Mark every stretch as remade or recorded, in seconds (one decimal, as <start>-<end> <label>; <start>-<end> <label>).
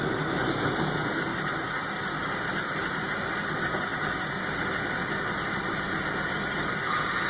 0.0-1.3 recorded; 1.3-2.3 remade; 2.3-7.3 recorded